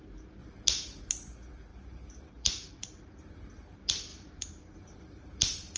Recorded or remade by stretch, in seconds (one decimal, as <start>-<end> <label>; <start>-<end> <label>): 0.0-1.7 recorded; 1.7-2.7 remade; 2.7-4.1 recorded; 4.1-5.8 remade